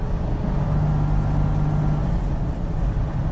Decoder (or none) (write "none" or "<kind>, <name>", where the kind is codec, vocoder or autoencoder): none